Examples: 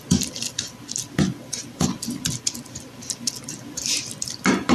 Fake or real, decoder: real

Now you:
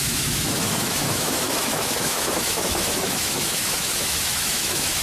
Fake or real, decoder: fake, autoencoder, DAC-VAE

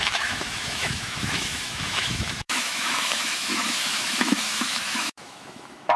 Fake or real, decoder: fake, autoencoder, DAC-VAE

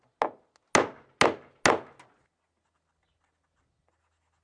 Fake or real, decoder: real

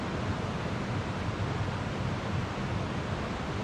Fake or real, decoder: real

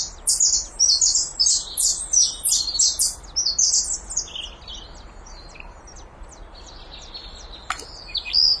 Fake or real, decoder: real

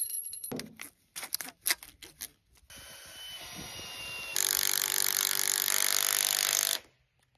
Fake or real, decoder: real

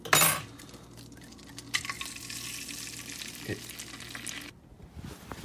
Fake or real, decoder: real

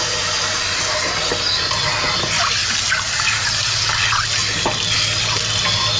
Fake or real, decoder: real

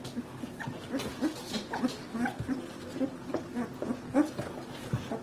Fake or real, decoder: real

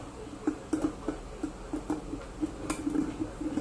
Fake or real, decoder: real